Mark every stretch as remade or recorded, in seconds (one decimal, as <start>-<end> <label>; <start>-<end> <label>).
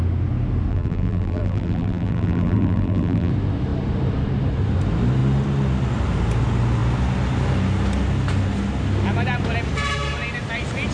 0.0-0.7 recorded; 0.7-3.3 remade; 3.3-10.9 recorded